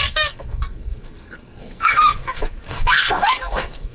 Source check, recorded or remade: remade